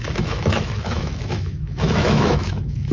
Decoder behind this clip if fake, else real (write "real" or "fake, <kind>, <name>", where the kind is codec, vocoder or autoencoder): fake, autoencoder, DAC-VAE